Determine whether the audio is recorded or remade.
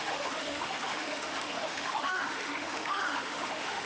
remade